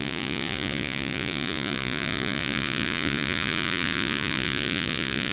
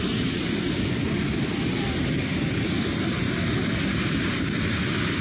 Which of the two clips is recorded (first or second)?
second